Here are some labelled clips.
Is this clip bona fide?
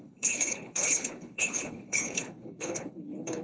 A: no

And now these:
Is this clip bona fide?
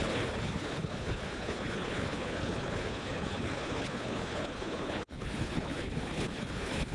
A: no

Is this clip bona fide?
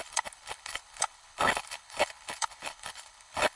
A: no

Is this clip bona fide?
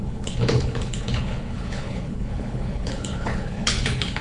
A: no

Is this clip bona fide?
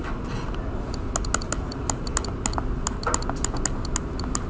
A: yes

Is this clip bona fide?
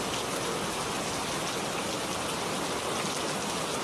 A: yes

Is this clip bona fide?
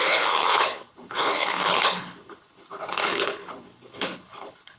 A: no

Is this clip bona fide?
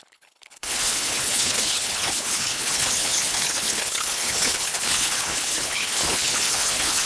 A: no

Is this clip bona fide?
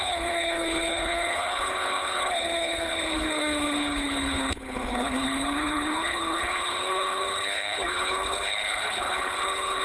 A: no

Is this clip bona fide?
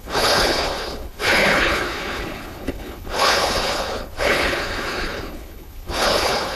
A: no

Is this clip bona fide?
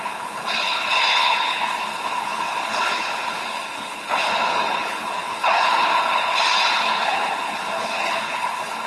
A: no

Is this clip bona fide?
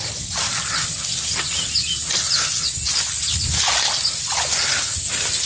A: yes